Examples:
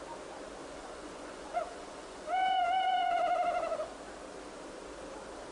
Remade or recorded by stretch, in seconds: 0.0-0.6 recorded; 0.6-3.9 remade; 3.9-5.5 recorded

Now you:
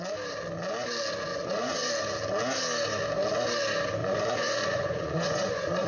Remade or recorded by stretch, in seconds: 0.0-1.3 recorded; 1.3-1.9 remade; 1.9-4.0 recorded; 4.0-5.9 remade

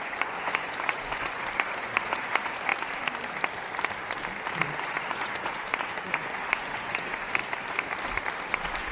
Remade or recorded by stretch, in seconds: 0.0-2.7 remade; 2.7-4.8 recorded; 4.8-7.4 remade; 7.4-8.5 recorded; 8.5-8.9 remade

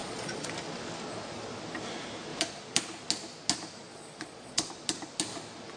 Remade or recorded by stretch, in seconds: 0.0-0.5 remade; 0.5-3.9 recorded; 3.9-4.7 remade; 4.7-5.8 recorded

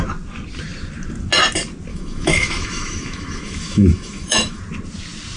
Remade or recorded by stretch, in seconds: 0.0-1.9 recorded; 1.9-4.6 remade; 4.6-5.4 recorded